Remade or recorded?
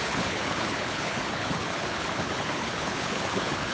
remade